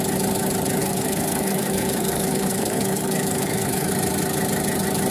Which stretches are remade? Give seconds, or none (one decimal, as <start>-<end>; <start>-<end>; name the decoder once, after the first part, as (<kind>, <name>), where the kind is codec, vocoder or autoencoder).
0.8-3.9 (codec, SNAC)